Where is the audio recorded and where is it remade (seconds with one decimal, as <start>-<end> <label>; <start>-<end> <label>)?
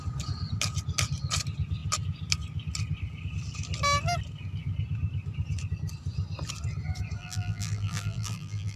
0.0-7.2 recorded; 7.2-8.8 remade